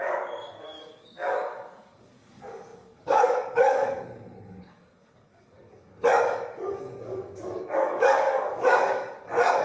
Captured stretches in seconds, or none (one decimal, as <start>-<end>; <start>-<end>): none